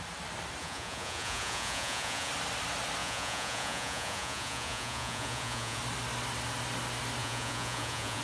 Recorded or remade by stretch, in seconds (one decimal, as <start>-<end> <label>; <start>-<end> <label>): 0.0-0.6 recorded; 0.6-2.3 remade; 2.3-3.0 recorded; 3.0-5.8 remade; 5.8-7.2 recorded; 7.2-8.2 remade